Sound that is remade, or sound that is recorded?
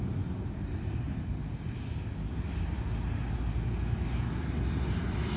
recorded